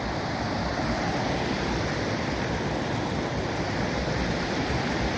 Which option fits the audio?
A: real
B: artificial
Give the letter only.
B